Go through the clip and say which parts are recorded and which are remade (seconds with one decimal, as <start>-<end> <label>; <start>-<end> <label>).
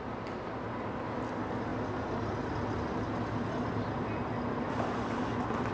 0.0-5.7 recorded